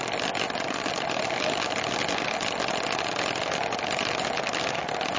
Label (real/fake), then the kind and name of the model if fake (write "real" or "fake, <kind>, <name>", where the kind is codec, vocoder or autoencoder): real